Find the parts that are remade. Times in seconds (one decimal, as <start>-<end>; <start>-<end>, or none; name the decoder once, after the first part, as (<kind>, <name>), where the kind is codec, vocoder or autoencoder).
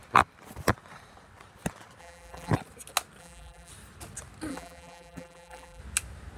2.0-2.5 (vocoder, BigVGAN v2); 3.2-3.7; 4.5-5.8